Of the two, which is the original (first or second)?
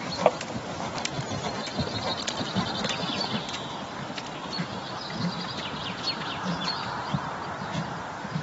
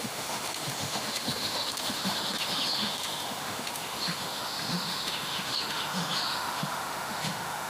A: first